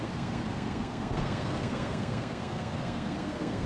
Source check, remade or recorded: remade